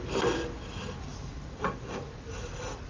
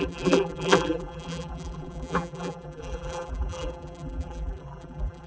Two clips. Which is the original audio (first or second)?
first